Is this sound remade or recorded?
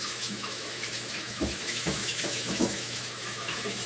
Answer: remade